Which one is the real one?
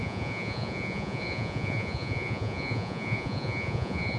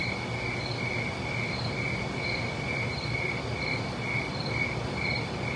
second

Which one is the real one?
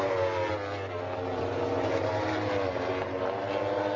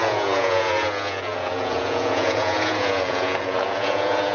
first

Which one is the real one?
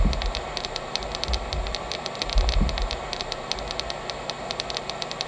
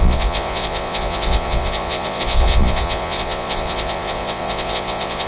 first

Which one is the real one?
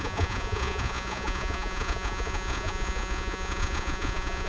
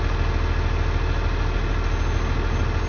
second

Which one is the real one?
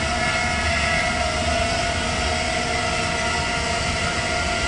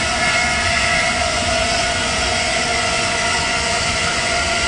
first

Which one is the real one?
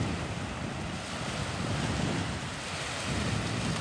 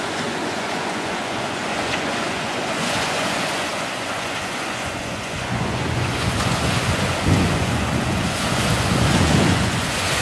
first